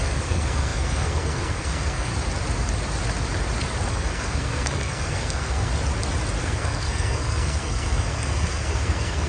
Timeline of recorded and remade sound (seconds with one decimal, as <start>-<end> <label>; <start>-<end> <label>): 0.0-2.1 remade; 2.1-3.9 recorded; 3.9-5.7 remade; 5.7-6.4 recorded; 6.4-9.3 remade